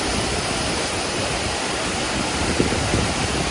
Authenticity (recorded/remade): recorded